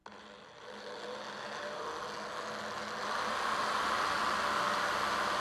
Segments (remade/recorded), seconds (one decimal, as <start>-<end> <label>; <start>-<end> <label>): 0.0-5.4 recorded